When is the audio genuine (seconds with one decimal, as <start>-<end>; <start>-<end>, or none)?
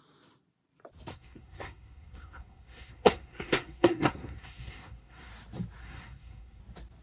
0.0-1.1; 5.3-5.8; 6.6-7.0